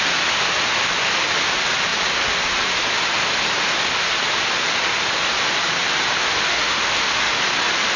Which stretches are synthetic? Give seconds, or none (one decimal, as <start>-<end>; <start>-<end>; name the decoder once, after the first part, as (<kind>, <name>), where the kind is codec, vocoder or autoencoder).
6.5-7.4 (autoencoder, DAC-VAE)

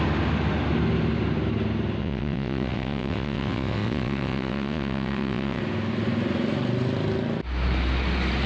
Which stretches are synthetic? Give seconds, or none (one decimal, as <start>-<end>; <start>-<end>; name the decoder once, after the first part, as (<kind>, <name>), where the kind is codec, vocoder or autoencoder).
2.0-5.6 (vocoder, WaveNeXt)

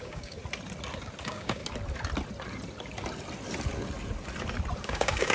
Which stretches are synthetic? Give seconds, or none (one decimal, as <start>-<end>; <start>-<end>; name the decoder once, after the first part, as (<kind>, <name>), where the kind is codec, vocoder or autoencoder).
0.0-0.4 (codec, DAC); 1.2-1.6; 4.8-5.3

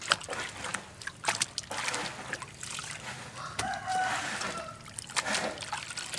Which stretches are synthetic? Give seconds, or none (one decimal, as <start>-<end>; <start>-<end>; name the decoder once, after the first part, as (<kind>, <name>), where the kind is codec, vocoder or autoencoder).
none

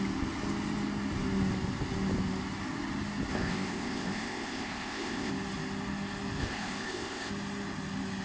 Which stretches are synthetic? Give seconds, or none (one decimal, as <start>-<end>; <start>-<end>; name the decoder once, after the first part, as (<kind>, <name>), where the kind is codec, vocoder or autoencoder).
3.3-5.3 (codec, ZipCodec); 6.4-7.3

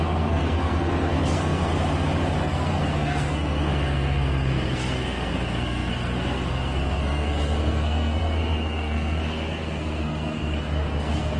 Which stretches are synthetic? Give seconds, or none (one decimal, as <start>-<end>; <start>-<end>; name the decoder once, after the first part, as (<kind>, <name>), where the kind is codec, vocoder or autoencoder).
0.0-1.7 (codec, SNAC); 2.4-11.4